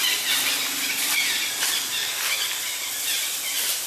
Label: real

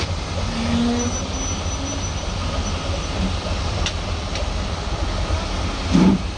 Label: real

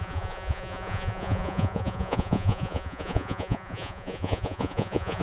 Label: fake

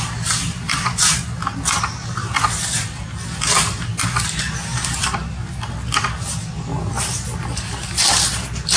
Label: real